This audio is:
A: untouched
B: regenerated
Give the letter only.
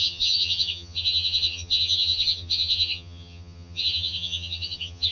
B